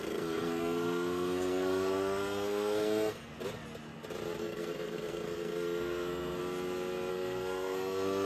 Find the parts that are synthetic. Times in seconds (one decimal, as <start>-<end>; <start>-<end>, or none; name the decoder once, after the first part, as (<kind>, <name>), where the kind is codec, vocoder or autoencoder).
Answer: 0.0-3.3 (codec, SNAC); 4.4-6.4; 7.1-8.2

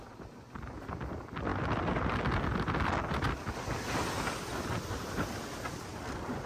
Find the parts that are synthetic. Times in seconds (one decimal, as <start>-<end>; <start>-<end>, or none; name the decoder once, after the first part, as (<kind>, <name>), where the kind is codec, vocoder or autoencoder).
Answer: none